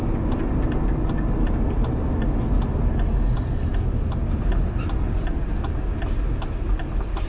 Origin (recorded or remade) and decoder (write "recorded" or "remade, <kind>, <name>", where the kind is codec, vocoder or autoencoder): recorded